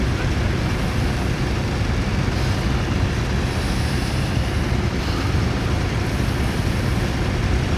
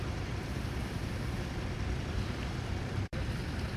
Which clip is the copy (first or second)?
second